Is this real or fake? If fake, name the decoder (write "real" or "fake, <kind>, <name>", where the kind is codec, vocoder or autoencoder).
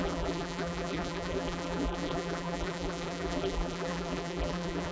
fake, vocoder, BigVGAN v2